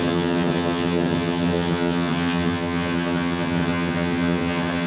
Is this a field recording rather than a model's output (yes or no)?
no